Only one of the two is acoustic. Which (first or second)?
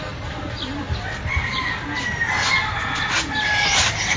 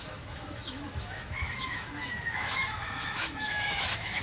first